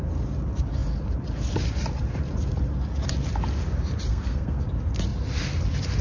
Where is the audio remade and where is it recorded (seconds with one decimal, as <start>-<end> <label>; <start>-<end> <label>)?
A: 0.0-4.1 recorded; 4.1-4.6 remade; 4.6-6.0 recorded